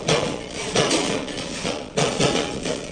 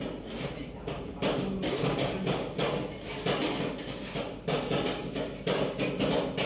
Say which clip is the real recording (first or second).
second